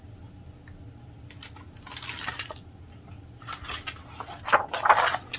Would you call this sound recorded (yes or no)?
yes